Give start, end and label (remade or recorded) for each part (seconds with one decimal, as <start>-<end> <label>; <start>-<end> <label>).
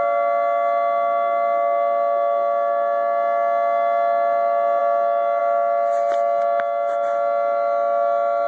0.0-8.5 recorded